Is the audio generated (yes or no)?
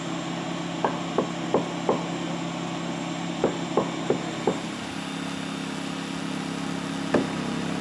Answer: no